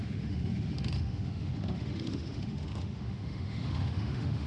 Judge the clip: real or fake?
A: fake